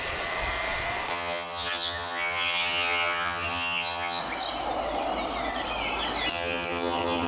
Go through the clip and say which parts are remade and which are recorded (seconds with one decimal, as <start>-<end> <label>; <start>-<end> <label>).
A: 0.0-1.1 recorded; 1.1-4.2 remade; 4.2-6.3 recorded; 6.3-7.3 remade